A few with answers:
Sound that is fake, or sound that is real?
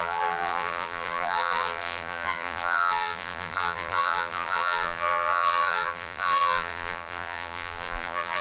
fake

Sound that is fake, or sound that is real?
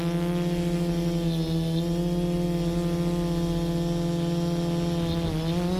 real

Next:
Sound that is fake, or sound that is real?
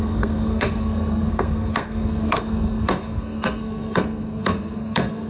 fake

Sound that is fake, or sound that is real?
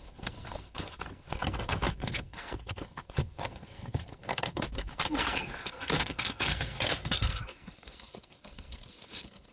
fake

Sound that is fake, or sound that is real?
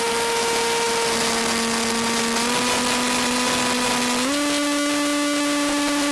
real